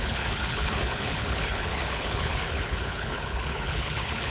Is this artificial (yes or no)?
yes